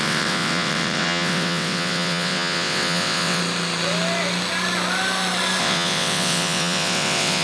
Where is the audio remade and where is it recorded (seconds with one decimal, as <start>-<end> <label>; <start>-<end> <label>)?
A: 0.0-3.4 remade; 3.4-5.6 recorded; 5.6-7.4 remade